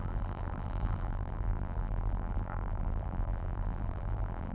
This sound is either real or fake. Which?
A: fake